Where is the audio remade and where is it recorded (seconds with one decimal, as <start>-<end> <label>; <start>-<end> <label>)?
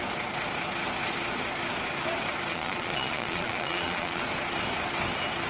0.0-2.5 recorded; 2.5-4.2 remade; 4.2-5.5 recorded